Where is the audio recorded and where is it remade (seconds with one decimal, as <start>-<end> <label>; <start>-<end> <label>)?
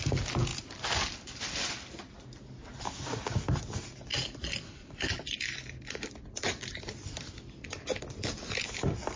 0.0-0.5 recorded; 0.5-2.1 remade; 2.1-4.1 recorded; 4.1-9.2 remade